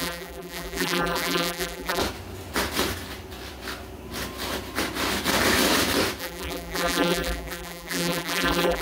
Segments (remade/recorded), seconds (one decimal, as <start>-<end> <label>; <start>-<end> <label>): 0.0-2.0 remade; 2.0-6.2 recorded; 6.2-8.8 remade